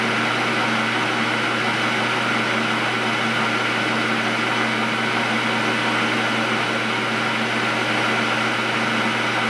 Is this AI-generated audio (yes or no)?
no